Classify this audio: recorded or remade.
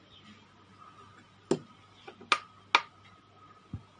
recorded